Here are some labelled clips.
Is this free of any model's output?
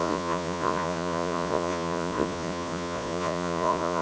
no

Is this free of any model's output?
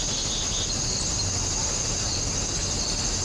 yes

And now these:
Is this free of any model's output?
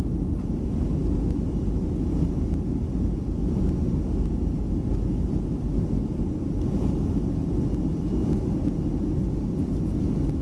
yes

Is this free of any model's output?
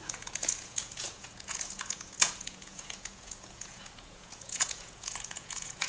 no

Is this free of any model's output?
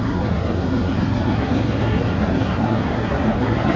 no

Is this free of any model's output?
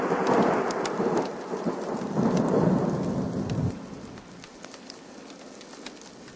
yes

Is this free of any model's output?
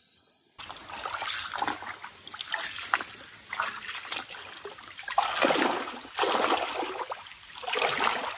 yes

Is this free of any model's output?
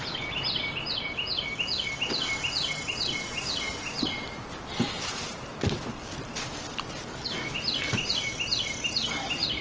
yes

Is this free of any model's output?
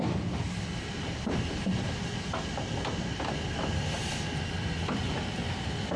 yes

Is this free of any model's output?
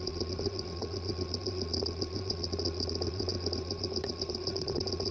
no